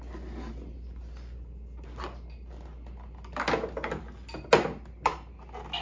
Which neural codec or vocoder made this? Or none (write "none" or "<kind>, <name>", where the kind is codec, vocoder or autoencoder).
none